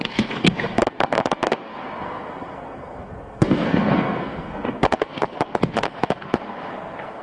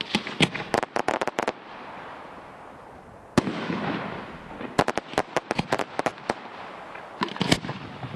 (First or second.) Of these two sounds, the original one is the second